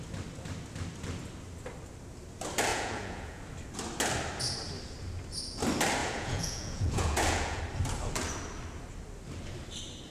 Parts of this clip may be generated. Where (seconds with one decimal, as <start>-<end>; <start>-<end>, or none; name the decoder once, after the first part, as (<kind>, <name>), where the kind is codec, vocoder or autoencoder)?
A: 2.7-3.4 (vocoder, Vocos); 6.0-7.6